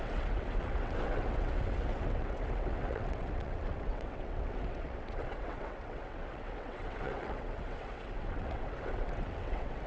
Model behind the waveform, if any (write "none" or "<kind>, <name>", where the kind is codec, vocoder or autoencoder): vocoder, WaveNeXt